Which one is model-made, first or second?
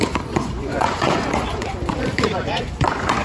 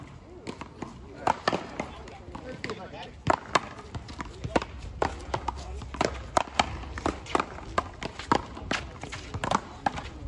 first